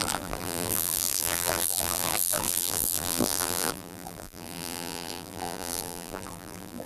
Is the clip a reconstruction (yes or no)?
yes